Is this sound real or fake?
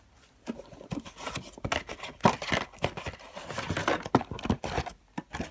real